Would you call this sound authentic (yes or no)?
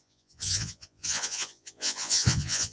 no